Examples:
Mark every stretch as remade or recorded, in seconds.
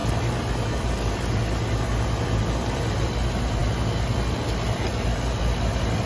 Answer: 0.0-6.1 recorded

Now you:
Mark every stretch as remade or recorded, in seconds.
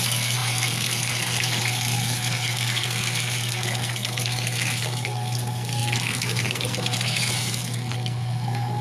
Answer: 0.0-8.8 remade